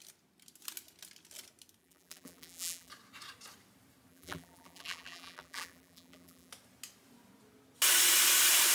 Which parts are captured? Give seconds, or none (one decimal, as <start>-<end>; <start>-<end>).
0.0-1.8; 2.9-4.1; 6.5-8.7